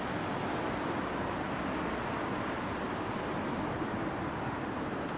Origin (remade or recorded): recorded